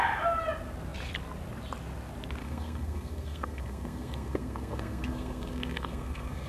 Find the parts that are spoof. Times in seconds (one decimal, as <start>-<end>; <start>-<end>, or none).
2.4-6.5